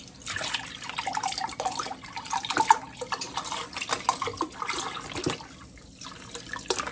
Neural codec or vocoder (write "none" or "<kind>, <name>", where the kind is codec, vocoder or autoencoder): none